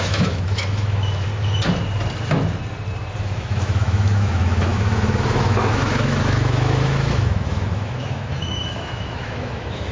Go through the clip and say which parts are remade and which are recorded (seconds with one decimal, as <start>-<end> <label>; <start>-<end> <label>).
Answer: 0.0-1.3 remade; 1.3-3.2 recorded; 3.2-9.9 remade